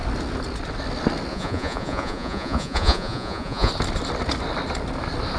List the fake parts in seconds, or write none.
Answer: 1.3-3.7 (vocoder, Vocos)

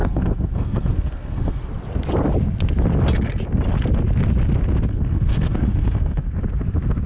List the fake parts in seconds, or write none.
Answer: 0.0-1.6 (codec, SNAC); 4.9-6.3

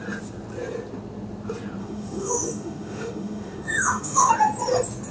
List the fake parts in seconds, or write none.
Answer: 1.8-4.3 (autoencoder, DAC-VAE)

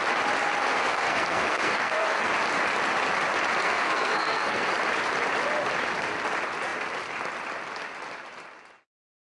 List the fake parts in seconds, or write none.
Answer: 0.6-2.3 (codec, SNAC); 3.6-4.7

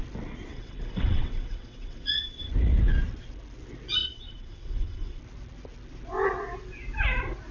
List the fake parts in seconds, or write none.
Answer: 0.5-2.5 (vocoder, WaveNeXt); 4.0-5.2

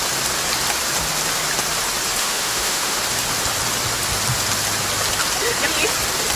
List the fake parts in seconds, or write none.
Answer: 2.2-3.0 (autoencoder, DAC-VAE)